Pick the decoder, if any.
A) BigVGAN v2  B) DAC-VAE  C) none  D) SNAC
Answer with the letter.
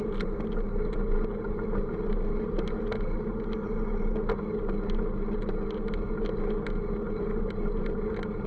C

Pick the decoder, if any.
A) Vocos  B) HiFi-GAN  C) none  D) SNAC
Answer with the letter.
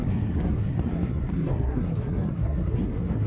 D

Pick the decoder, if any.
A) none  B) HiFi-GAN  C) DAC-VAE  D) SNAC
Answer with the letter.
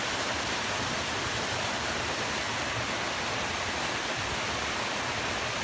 A